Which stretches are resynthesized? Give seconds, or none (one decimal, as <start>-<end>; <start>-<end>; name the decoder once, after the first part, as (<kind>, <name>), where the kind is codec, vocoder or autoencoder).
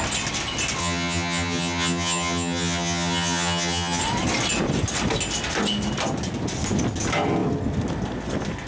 0.8-4.0 (vocoder, HiFi-GAN)